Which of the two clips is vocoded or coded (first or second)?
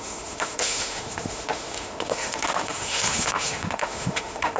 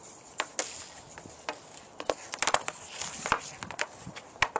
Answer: first